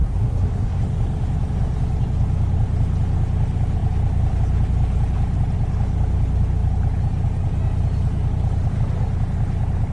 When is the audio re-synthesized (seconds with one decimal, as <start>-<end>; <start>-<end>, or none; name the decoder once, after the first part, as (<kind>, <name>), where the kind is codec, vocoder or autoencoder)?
0.0-0.8 (codec, SNAC)